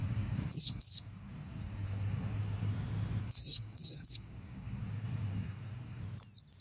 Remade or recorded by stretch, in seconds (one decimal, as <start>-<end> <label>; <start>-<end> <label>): 0.0-2.7 remade; 2.7-3.2 recorded; 3.2-6.0 remade; 6.0-6.6 recorded